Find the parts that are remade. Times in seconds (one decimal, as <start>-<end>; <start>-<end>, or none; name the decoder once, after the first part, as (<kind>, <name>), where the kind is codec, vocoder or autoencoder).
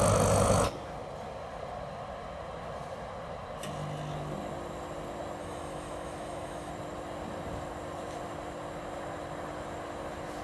5.4-6.7 (autoencoder, DAC-VAE)